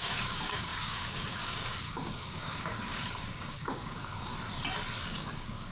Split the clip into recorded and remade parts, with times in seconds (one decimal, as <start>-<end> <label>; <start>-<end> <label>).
0.0-4.3 remade; 4.3-5.0 recorded; 5.0-5.7 remade